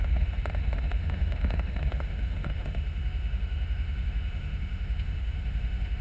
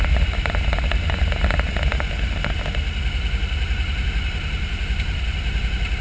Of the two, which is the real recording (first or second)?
second